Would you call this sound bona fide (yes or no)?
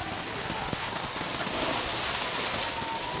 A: yes